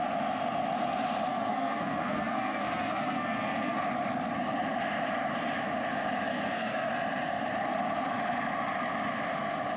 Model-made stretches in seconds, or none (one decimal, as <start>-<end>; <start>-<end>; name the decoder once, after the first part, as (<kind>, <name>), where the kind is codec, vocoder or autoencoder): 1.3-3.8 (codec, SNAC); 6.3-6.9